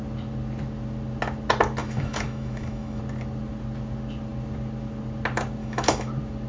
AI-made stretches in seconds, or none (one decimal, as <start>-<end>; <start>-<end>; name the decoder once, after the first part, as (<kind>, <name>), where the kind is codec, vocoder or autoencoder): 1.8-3.0 (autoencoder, DAC-VAE); 5.6-6.1